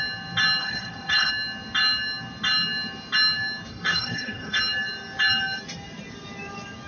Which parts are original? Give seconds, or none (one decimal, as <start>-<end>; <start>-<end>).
0.0-0.6; 1.3-3.7; 4.6-6.9